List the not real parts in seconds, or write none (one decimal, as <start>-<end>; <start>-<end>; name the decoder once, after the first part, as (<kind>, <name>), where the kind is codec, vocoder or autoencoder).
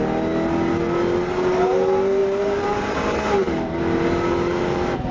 2.2-3.0 (vocoder, BigVGAN v2)